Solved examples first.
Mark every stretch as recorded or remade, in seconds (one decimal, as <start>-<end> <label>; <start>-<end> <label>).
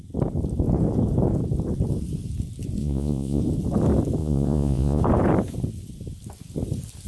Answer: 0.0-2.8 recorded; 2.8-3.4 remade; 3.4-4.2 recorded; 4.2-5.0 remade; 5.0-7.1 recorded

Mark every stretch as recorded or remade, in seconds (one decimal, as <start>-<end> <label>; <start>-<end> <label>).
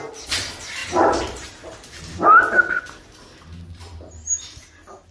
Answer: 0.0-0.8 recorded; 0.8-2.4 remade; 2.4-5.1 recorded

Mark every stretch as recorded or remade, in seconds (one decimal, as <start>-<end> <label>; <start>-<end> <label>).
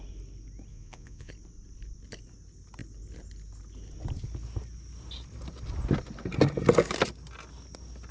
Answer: 0.0-0.7 recorded; 0.7-1.3 remade; 1.3-8.1 recorded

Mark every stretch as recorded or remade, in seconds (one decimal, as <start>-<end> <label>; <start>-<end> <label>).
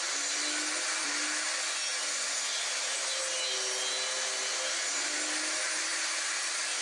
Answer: 0.0-6.8 recorded